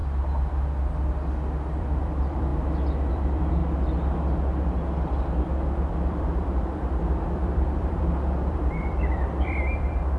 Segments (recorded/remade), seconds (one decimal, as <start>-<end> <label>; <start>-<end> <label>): 0.0-1.8 recorded; 1.8-2.5 remade; 2.5-3.1 recorded; 3.1-3.6 remade; 3.6-5.9 recorded; 5.9-10.2 remade